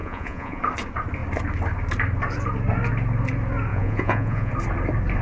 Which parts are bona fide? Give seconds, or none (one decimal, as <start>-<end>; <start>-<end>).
0.6-3.7; 4.5-5.2